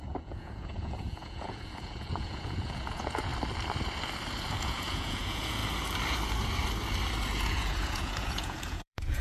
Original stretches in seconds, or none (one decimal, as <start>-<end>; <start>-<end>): 3.3-4.5; 5.6-7.4